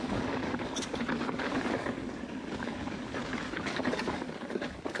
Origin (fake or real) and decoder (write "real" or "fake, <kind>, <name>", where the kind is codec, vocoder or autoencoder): fake, codec, DAC